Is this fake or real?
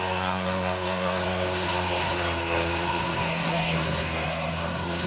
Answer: fake